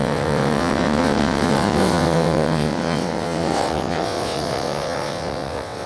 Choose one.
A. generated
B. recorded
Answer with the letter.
A